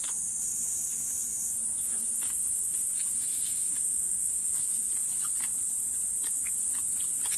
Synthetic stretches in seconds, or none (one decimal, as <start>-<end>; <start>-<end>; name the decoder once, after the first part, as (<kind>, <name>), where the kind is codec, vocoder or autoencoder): 0.5-4.9 (autoencoder, DAC-VAE)